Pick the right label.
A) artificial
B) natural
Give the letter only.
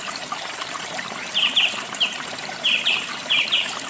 A